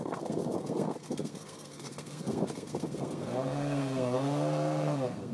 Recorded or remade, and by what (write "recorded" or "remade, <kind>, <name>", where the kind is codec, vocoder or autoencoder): remade, codec, SNAC